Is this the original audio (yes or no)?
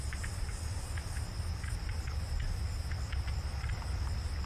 yes